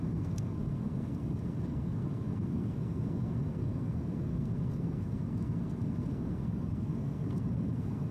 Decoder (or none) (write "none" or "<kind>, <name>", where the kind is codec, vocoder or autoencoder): codec, SNAC